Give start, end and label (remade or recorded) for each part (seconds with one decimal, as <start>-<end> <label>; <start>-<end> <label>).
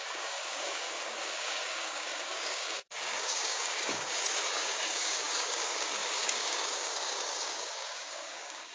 0.0-8.7 remade